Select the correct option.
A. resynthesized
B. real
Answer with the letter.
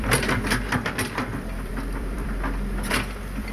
A